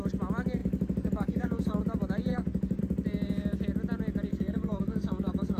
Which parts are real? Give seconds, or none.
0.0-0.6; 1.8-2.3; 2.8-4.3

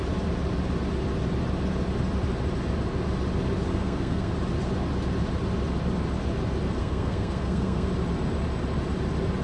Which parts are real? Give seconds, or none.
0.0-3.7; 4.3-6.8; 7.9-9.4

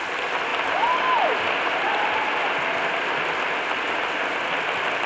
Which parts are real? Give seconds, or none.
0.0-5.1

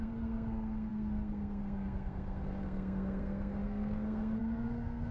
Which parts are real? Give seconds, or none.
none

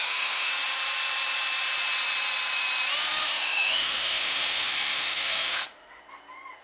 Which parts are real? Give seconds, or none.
0.5-3.2; 6.0-6.6

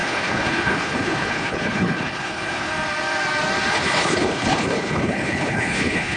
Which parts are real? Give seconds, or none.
2.7-3.7

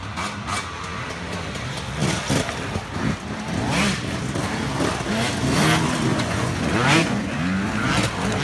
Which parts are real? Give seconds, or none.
0.0-6.1; 7.3-8.4

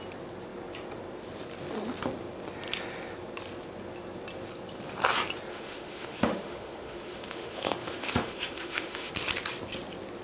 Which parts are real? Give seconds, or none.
0.0-5.5; 9.1-10.2